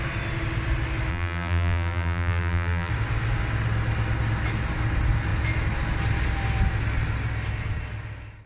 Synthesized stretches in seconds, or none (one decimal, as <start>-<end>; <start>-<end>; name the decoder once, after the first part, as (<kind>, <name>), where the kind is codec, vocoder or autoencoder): 1.1-2.9 (vocoder, BigVGAN v2)